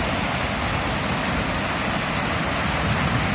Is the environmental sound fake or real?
real